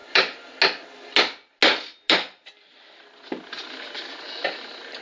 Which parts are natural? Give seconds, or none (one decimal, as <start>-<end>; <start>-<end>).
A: 0.0-5.0